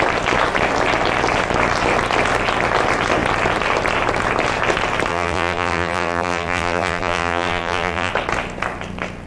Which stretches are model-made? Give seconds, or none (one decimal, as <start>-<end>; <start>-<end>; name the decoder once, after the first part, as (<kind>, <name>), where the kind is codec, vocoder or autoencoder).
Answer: 5.1-8.1 (vocoder, BigVGAN v2)